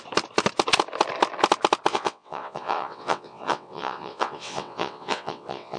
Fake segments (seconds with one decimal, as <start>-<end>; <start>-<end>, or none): 1.9-5.8